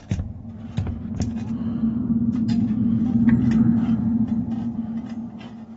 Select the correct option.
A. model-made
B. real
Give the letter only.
B